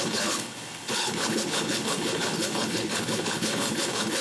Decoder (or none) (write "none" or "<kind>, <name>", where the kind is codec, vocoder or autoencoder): codec, HILCodec